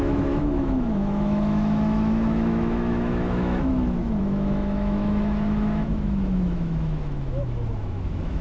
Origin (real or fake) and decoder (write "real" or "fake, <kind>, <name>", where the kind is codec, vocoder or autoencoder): fake, autoencoder, DAC-VAE